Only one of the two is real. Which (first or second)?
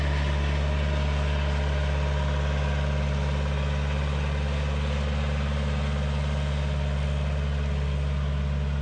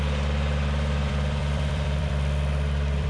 first